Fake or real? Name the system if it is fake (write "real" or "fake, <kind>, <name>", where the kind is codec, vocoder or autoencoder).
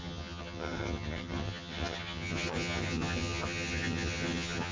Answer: fake, vocoder, HiFi-GAN